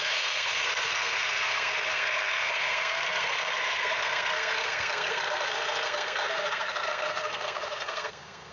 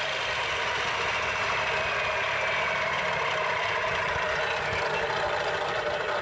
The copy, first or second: first